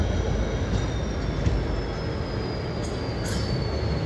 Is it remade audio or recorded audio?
recorded